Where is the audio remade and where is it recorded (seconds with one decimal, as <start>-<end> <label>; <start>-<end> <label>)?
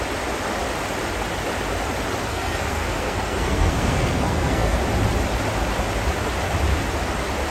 0.0-2.3 recorded; 2.3-4.8 remade; 4.8-7.5 recorded